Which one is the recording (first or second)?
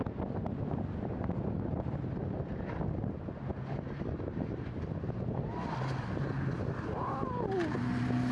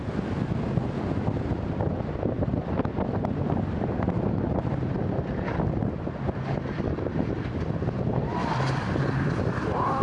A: first